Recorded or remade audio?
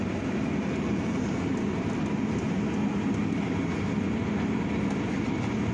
recorded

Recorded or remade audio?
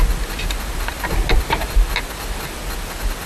recorded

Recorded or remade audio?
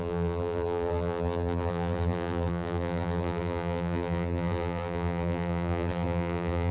remade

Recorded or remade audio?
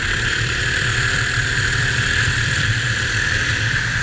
remade